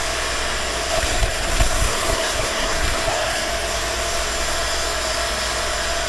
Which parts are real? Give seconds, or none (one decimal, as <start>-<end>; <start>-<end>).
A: 0.0-0.9; 3.5-6.1